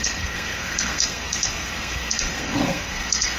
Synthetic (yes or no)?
yes